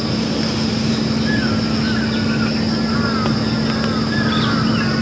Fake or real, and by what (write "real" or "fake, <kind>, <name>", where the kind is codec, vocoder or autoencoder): real